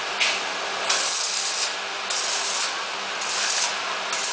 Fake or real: real